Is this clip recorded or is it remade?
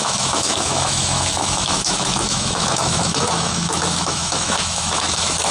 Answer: remade